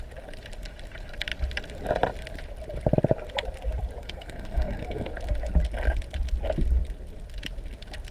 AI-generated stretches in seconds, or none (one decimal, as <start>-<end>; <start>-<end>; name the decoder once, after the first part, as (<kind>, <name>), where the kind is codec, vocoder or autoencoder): 4.0-5.1 (codec, SNAC)